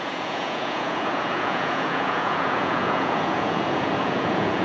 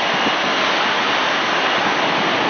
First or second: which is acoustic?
second